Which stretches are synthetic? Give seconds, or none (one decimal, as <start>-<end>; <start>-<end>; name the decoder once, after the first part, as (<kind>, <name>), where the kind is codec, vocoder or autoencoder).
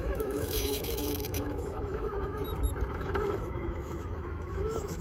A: 0.0-2.4 (autoencoder, DAC-VAE); 2.9-5.0